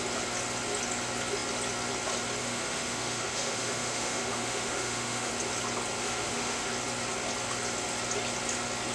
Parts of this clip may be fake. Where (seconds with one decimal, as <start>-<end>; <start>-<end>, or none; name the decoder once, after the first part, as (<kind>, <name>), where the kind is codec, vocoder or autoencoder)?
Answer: 2.4-5.3 (autoencoder, DAC-VAE); 6.0-6.7